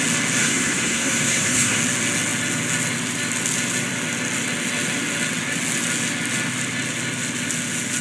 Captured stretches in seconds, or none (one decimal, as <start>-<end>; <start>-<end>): 0.0-0.4; 1.8-8.0